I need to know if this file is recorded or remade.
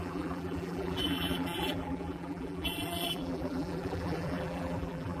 remade